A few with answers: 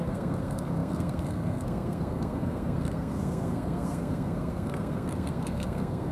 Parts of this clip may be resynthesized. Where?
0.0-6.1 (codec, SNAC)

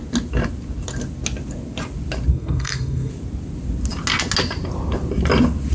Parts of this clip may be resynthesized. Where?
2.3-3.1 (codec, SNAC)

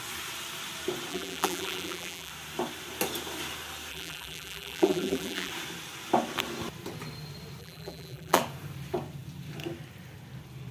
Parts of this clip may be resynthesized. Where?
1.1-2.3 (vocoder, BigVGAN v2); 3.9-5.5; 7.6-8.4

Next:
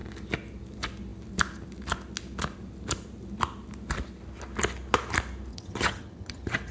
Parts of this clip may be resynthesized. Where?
5.5-6.7 (vocoder, HiFi-GAN)